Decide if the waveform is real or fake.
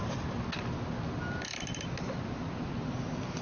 real